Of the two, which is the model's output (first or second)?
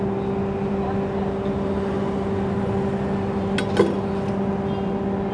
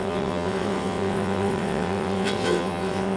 second